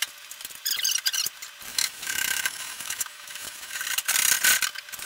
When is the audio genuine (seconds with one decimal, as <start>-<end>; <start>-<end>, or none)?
0.0-1.7; 3.8-5.1